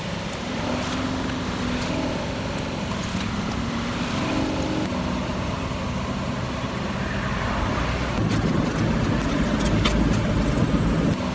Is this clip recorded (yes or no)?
yes